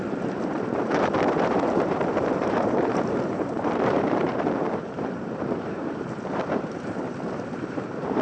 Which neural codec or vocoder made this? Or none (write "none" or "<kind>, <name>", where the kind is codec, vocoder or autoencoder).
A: vocoder, BigVGAN v2